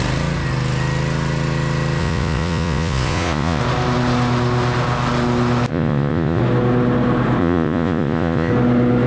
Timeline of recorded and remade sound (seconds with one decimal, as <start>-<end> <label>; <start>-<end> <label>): 0.0-2.0 recorded; 2.0-3.6 remade; 3.6-5.7 recorded; 5.7-6.4 remade; 6.4-7.4 recorded; 7.4-8.5 remade; 8.5-9.1 recorded